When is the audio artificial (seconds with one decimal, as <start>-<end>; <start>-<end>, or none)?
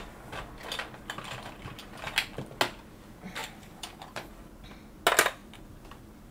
3.4-4.4